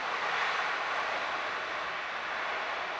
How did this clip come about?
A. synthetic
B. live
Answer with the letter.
B